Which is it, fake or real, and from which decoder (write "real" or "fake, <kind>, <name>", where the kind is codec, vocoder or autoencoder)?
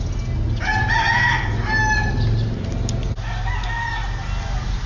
real